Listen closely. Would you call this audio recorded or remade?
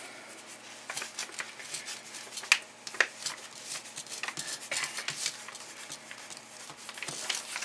recorded